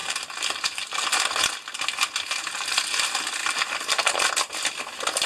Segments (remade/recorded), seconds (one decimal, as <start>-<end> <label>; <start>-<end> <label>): 0.0-1.1 remade; 1.1-3.4 recorded; 3.4-4.3 remade; 4.3-5.3 recorded